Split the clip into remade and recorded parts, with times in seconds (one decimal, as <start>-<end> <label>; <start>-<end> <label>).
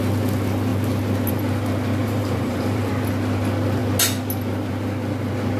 0.0-2.0 recorded; 2.0-2.9 remade; 2.9-5.6 recorded